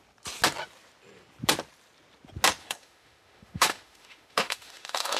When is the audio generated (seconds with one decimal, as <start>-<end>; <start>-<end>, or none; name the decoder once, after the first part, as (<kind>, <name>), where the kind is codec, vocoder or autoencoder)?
2.6-5.2 (autoencoder, DAC-VAE)